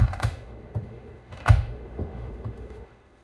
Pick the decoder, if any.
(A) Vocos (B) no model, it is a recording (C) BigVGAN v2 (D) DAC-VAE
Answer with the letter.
D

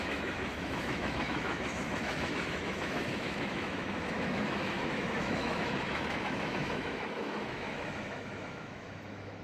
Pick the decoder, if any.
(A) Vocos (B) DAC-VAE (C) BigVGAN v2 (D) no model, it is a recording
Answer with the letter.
B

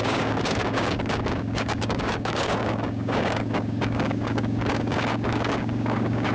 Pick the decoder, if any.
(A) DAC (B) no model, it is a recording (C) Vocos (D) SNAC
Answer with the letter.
A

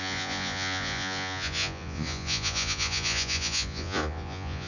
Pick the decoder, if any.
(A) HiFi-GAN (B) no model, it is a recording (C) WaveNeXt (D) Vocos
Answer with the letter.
D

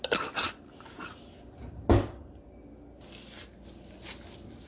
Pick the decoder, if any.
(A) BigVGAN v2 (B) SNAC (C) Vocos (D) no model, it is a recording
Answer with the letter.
D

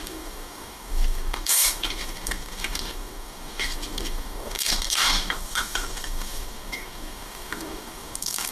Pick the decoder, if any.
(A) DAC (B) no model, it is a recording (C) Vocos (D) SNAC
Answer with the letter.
A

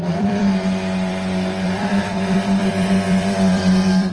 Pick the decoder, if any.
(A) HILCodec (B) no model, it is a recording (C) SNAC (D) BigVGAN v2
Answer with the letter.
D